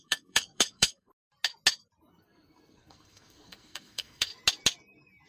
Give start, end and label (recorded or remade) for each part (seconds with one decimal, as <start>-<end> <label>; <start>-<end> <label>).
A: 0.0-1.1 remade; 1.1-2.1 recorded; 2.1-4.3 remade; 4.3-5.3 recorded